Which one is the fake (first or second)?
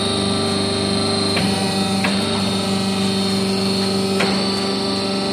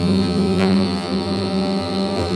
second